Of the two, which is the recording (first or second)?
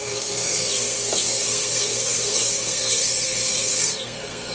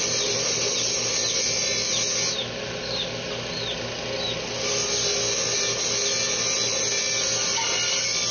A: second